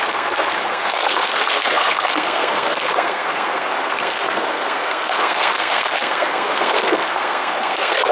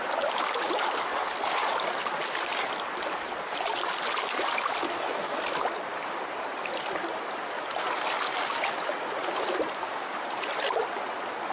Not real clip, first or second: first